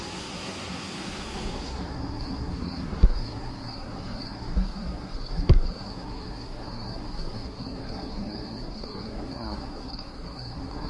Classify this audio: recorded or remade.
remade